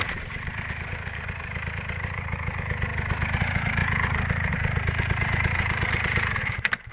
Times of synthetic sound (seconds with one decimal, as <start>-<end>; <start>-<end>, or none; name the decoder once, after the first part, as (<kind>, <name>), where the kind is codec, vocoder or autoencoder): 0.0-2.9 (vocoder, BigVGAN v2); 3.4-6.9